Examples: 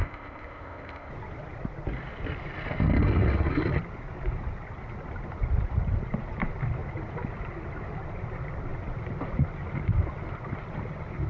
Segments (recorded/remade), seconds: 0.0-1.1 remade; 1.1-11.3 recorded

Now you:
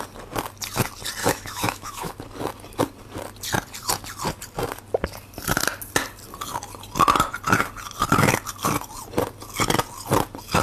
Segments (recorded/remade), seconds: 0.0-1.2 recorded; 1.2-2.1 remade; 2.1-10.6 recorded